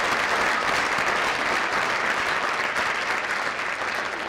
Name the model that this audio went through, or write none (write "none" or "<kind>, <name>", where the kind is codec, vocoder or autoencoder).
none